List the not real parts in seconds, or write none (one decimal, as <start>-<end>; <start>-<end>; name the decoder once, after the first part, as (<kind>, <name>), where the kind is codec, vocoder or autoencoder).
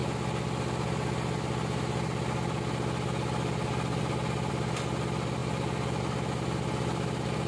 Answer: none